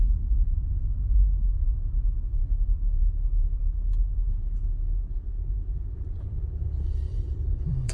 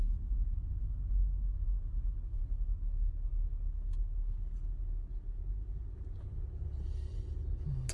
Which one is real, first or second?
second